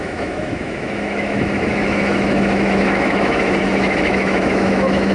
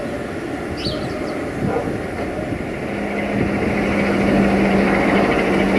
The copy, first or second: first